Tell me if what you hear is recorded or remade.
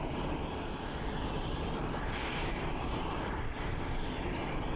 recorded